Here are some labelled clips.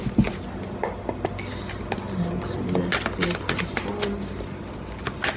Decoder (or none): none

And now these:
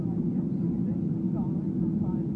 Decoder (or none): none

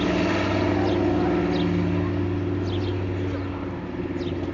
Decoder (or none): none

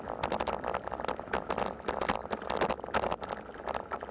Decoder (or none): none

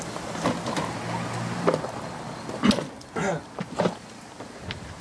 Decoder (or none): none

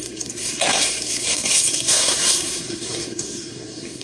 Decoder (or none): codec, SNAC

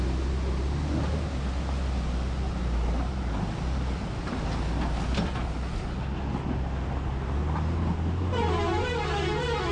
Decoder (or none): none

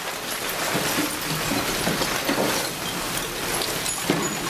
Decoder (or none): none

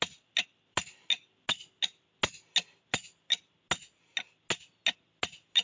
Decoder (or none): none